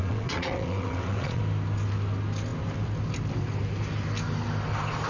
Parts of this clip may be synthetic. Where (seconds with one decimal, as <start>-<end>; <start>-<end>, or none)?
0.0-1.4